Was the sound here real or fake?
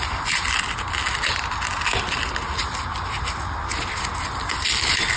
real